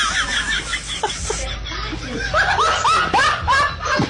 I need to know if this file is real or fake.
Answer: real